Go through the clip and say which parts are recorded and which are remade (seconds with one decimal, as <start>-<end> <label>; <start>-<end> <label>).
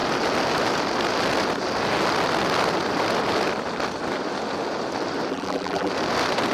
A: 0.0-5.3 recorded; 5.3-5.9 remade; 5.9-6.5 recorded